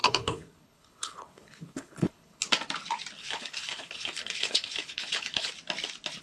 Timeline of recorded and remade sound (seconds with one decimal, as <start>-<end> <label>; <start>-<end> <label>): 0.0-2.4 remade; 2.4-3.2 recorded; 3.2-5.5 remade; 5.5-6.2 recorded